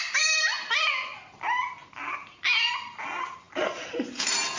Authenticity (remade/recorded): recorded